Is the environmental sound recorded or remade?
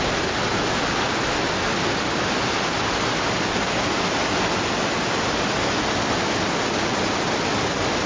recorded